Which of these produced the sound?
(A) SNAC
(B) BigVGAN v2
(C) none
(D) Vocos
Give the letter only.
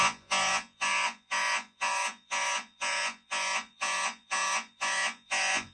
D